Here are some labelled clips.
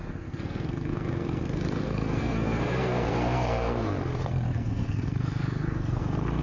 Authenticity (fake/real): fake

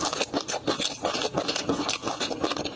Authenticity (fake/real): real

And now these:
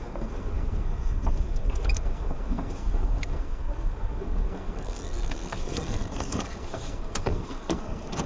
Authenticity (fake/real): fake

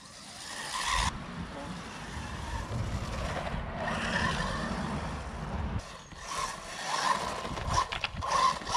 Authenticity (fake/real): real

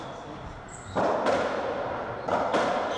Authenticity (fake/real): real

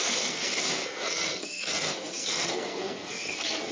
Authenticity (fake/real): fake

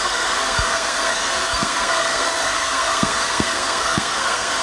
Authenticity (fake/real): fake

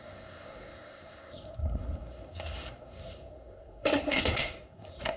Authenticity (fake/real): fake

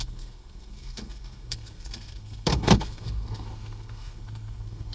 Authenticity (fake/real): fake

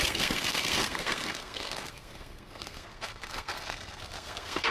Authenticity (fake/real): fake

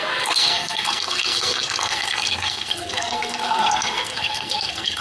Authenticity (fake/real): fake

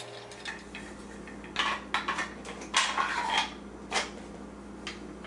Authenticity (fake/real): real